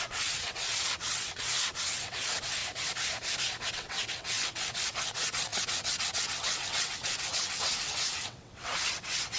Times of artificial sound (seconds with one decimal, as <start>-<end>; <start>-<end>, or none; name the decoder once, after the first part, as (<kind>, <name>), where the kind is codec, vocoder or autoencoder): 0.0-2.6 (vocoder, WaveNeXt); 3.7-9.4

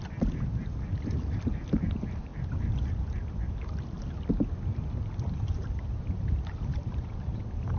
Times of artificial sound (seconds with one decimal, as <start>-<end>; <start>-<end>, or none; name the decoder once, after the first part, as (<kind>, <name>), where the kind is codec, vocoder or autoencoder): none